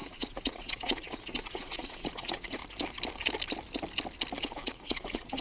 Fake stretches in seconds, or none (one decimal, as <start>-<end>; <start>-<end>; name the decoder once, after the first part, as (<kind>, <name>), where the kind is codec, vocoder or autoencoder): 0.0-2.6 (vocoder, Vocos); 4.4-5.4